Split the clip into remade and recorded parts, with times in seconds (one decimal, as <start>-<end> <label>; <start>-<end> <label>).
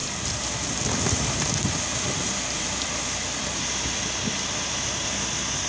0.0-3.4 remade; 3.4-5.7 recorded